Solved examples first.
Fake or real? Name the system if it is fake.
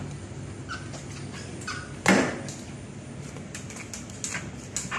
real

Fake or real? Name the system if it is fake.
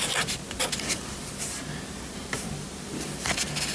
real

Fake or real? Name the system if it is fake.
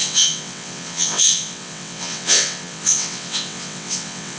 fake, vocoder, WaveNeXt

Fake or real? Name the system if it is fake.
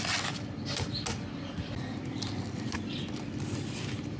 real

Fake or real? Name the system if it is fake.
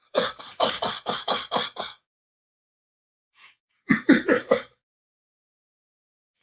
fake, codec, DAC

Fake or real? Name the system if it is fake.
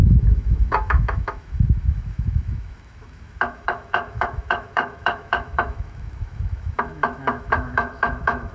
fake, autoencoder, DAC-VAE